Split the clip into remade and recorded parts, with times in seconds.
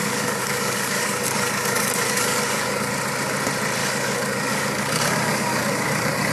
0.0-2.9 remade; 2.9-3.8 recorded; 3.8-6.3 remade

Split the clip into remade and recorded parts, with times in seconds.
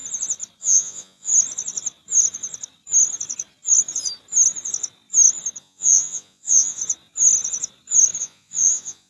0.0-0.6 recorded; 0.6-1.3 remade; 1.3-5.6 recorded; 5.6-6.8 remade; 6.8-8.2 recorded; 8.2-9.1 remade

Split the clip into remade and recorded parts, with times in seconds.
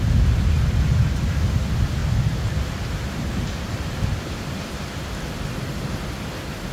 0.0-2.0 recorded; 2.0-4.0 remade; 4.0-6.7 recorded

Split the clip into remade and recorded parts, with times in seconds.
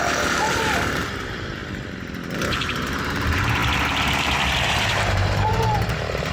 0.0-1.6 remade; 1.6-2.5 recorded; 2.5-6.3 remade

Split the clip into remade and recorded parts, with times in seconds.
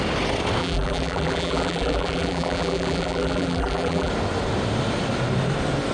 0.0-0.6 recorded; 0.6-4.1 remade; 4.1-5.9 recorded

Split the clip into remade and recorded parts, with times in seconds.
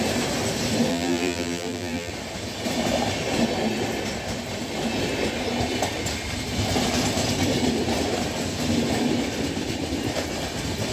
0.0-0.9 recorded; 0.9-2.1 remade; 2.1-10.9 recorded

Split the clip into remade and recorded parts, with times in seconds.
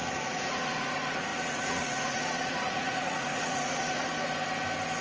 0.0-4.1 remade; 4.1-5.0 recorded